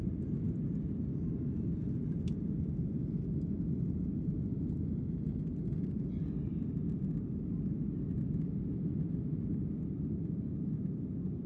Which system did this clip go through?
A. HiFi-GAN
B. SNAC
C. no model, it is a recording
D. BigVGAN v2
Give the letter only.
C